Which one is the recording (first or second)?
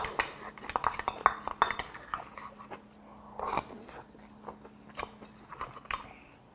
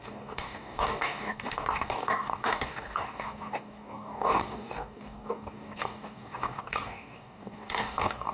first